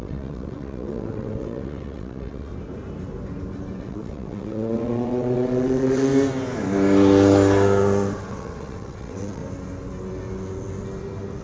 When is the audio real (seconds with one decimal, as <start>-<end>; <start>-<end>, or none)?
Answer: 2.5-3.8; 6.1-8.3; 9.4-11.4